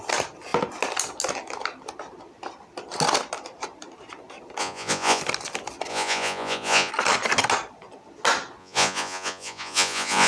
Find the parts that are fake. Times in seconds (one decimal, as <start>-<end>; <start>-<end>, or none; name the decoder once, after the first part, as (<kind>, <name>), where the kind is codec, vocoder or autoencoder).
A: 4.6-5.2 (vocoder, Vocos); 5.9-6.9; 8.6-10.3